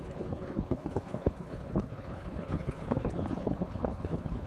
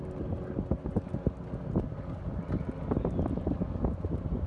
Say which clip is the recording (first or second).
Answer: second